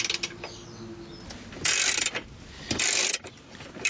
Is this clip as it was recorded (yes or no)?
yes